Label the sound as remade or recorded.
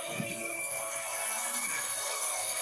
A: remade